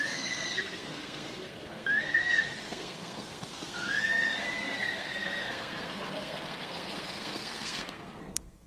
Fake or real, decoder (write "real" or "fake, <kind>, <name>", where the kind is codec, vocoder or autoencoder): fake, codec, SNAC